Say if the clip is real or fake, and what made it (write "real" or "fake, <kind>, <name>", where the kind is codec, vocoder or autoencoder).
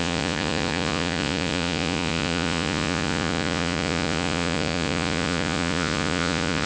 fake, vocoder, Vocos